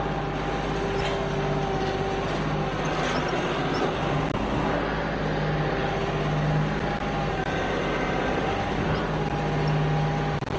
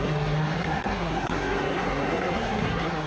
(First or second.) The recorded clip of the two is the first